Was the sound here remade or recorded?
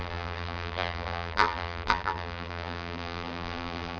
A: remade